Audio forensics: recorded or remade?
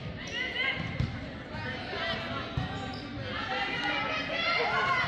recorded